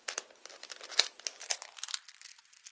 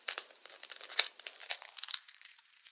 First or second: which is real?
first